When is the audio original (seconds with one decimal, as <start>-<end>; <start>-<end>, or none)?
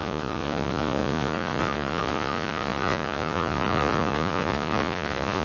none